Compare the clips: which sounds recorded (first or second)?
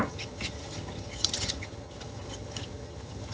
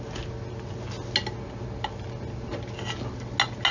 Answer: second